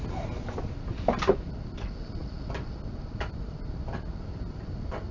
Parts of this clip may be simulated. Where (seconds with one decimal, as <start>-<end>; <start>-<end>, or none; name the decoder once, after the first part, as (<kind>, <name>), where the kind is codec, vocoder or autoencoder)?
none